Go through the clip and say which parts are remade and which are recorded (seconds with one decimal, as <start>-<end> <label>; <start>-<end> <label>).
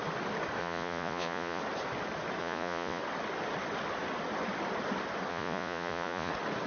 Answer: 0.0-0.6 recorded; 0.6-1.6 remade; 1.6-2.4 recorded; 2.4-3.0 remade; 3.0-5.3 recorded; 5.3-6.3 remade; 6.3-6.7 recorded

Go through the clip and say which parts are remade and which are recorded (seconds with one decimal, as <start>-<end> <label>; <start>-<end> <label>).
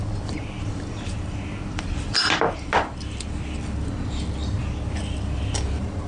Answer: 0.0-6.1 remade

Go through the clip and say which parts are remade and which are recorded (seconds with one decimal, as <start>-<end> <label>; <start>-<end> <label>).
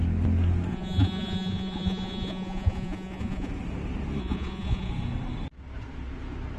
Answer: 0.0-0.7 recorded; 0.7-3.5 remade; 3.5-4.2 recorded; 4.2-4.9 remade; 4.9-6.6 recorded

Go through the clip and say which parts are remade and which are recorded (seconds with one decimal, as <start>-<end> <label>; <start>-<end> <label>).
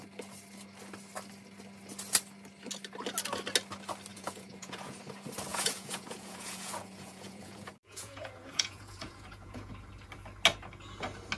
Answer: 0.0-4.1 recorded; 4.1-5.0 remade; 5.0-5.5 recorded; 5.5-9.7 remade; 9.7-11.4 recorded